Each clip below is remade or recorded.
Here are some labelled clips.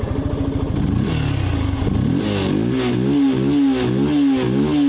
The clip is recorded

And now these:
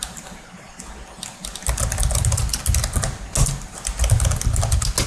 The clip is recorded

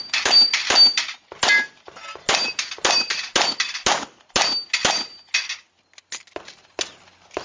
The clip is recorded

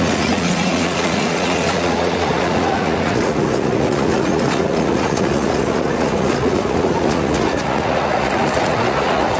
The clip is remade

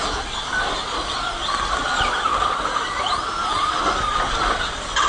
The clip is recorded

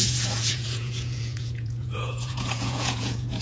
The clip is remade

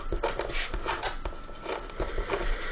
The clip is recorded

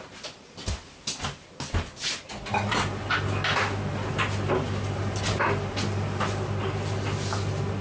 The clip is recorded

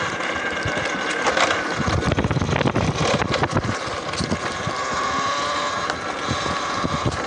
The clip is recorded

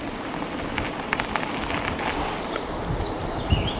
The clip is recorded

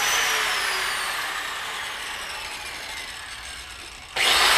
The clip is recorded